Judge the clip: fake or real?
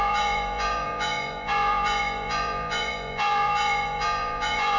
fake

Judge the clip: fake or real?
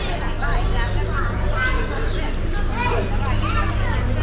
real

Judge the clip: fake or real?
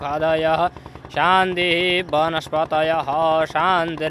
real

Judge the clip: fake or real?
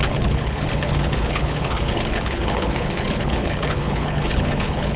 fake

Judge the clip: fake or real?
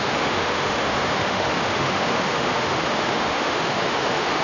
fake